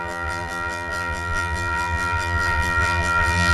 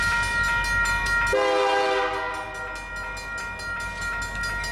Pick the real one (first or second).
second